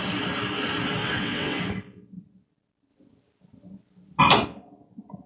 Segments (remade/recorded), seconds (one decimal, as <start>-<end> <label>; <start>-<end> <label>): 0.0-1.0 recorded; 1.0-1.6 remade; 1.6-5.3 recorded

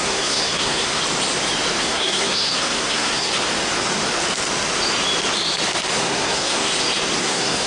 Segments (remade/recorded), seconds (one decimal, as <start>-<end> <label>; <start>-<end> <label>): 0.0-1.0 remade; 1.0-1.8 recorded; 1.8-3.3 remade; 3.3-5.9 recorded; 5.9-6.7 remade; 6.7-7.2 recorded; 7.2-7.7 remade

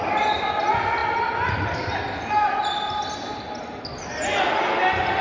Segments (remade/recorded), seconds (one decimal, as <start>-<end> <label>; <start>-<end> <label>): 0.0-5.2 recorded

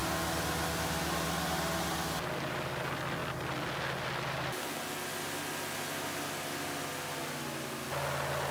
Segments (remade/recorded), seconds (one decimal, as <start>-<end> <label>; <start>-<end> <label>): 0.0-8.5 recorded

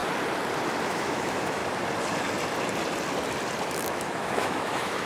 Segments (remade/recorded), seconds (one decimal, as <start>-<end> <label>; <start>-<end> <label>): 0.0-0.8 recorded; 0.8-1.6 remade; 1.6-3.6 recorded; 3.6-5.1 remade

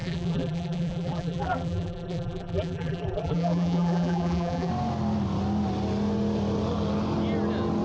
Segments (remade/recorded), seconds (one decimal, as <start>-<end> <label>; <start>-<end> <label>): 0.0-4.7 remade; 4.7-7.8 recorded

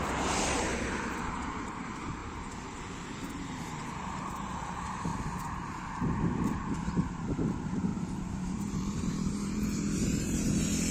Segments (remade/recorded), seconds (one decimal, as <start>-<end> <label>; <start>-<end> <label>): 0.0-0.7 remade; 0.7-1.3 recorded; 1.3-5.1 remade; 5.1-6.5 recorded; 6.5-10.9 remade